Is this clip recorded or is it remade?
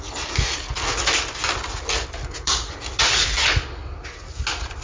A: recorded